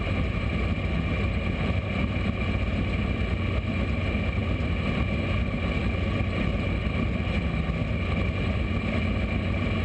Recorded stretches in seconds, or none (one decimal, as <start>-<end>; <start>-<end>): 0.0-9.8

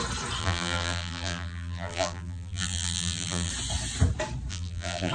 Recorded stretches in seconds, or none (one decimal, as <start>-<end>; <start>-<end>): 0.0-0.4; 3.5-4.5

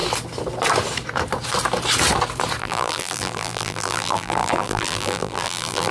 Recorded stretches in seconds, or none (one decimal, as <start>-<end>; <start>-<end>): 0.0-2.6

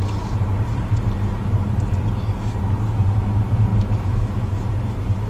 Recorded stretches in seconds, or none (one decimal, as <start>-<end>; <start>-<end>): 0.0-3.7; 4.7-5.3

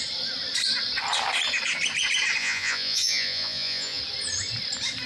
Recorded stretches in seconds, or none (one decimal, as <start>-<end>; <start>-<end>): 0.0-2.4; 4.0-5.1

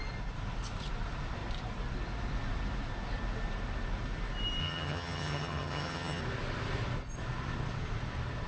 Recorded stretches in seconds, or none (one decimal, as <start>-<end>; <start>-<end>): 0.0-4.6; 6.2-8.5